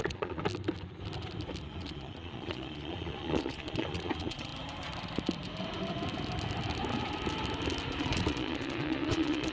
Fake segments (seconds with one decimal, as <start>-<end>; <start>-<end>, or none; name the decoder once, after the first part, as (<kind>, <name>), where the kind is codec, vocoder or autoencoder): 0.0-0.4 (vocoder, Vocos); 1.6-4.5; 8.0-9.5